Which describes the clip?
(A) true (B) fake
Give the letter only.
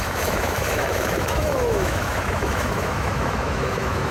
B